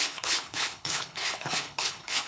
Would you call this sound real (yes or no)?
no